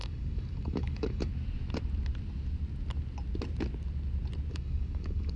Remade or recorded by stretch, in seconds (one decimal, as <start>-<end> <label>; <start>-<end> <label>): 0.0-1.3 remade; 1.3-4.5 recorded; 4.5-5.4 remade